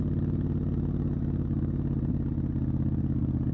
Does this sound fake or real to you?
real